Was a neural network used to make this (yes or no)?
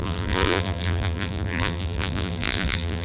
yes